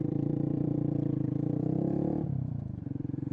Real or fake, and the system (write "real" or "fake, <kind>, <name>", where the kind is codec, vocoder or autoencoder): fake, vocoder, BigVGAN v2